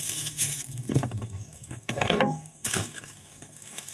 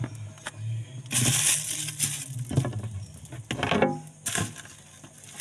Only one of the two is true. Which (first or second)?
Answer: second